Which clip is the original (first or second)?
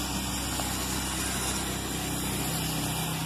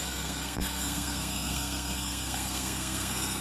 first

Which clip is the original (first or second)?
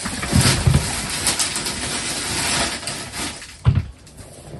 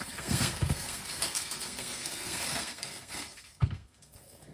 first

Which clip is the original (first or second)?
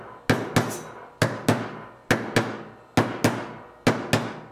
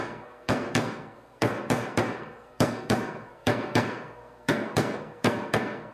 first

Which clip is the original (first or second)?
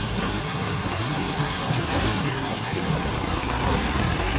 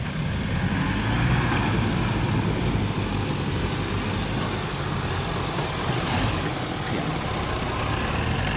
second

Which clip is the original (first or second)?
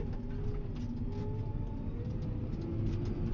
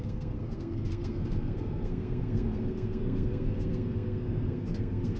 first